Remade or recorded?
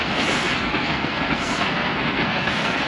remade